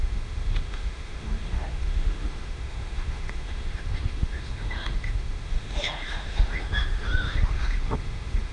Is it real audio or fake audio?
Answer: fake